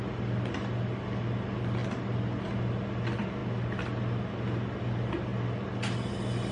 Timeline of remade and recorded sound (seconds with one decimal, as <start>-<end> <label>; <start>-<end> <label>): 0.0-6.5 recorded